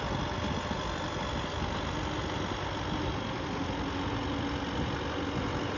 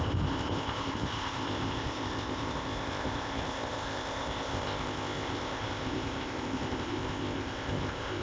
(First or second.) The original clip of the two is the first